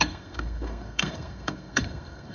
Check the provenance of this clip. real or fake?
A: fake